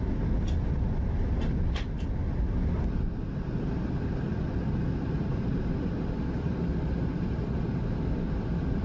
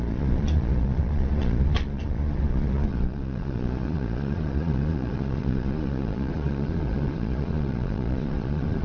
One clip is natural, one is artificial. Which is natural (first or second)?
first